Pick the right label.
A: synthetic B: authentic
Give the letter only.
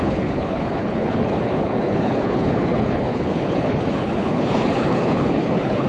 A